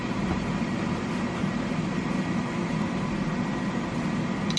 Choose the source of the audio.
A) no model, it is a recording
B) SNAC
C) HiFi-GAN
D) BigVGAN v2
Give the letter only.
A